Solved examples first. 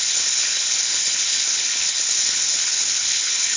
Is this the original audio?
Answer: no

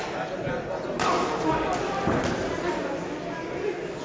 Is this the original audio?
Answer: yes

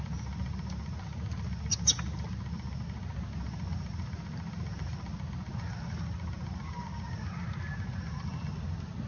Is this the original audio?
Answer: yes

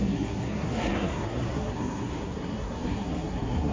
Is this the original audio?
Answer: no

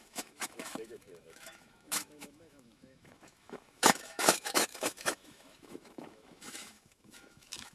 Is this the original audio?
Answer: no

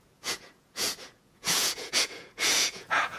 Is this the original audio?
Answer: no